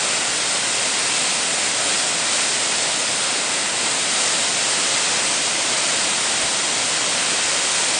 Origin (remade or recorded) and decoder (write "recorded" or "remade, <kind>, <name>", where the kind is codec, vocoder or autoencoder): recorded